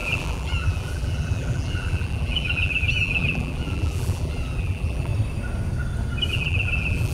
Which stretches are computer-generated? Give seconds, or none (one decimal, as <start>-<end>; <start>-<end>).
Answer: 0.0-5.1; 6.3-7.1